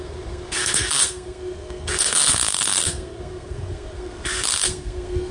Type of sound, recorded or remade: remade